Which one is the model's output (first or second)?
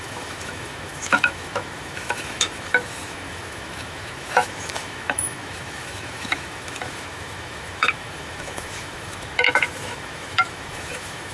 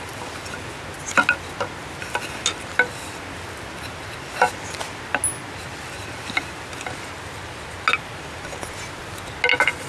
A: first